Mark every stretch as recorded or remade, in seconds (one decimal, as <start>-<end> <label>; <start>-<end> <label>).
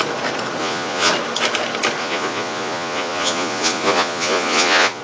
0.0-0.6 recorded; 0.6-1.1 remade; 1.1-2.0 recorded; 2.0-5.0 remade